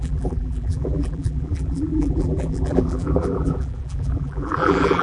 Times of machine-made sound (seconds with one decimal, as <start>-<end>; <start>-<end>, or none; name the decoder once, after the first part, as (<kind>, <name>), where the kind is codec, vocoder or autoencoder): 0.0-5.0 (vocoder, BigVGAN v2)